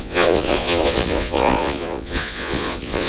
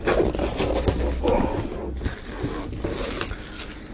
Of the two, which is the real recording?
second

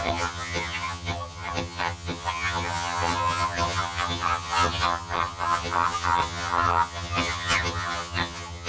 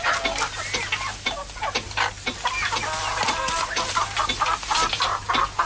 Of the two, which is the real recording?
second